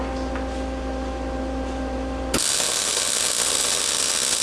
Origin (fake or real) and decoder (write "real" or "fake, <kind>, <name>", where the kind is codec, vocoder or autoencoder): real